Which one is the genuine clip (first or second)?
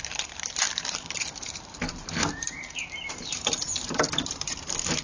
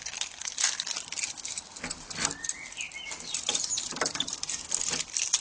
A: second